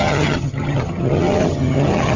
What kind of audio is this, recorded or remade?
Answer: remade